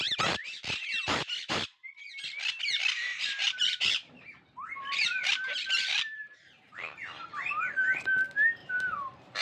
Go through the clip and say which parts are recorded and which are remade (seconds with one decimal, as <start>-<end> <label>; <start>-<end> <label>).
0.0-3.1 recorded; 3.1-7.7 remade; 7.7-8.6 recorded; 8.6-9.4 remade